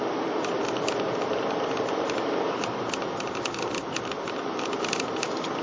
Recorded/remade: remade